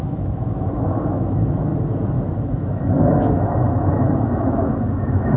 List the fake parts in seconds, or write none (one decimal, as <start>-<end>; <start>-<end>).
0.0-1.7; 2.4-5.4